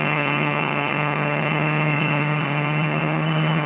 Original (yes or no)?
no